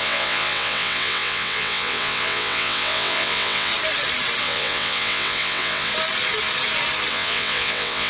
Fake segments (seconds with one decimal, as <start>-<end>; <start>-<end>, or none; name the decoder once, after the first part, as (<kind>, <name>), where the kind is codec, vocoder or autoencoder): 0.0-3.7 (vocoder, WaveNeXt); 4.4-5.9; 7.1-8.1